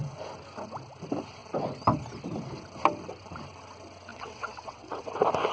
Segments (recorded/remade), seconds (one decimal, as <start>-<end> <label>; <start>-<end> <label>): 0.0-4.1 recorded; 4.1-5.1 remade; 5.1-5.5 recorded